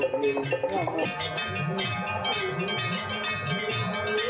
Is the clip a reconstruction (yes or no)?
no